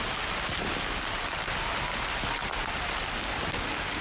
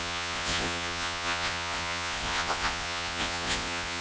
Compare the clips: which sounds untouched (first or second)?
first